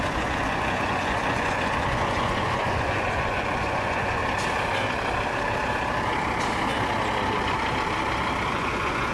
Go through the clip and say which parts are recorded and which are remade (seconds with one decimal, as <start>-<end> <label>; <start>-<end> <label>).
0.0-4.2 remade; 4.2-8.5 recorded; 8.5-9.1 remade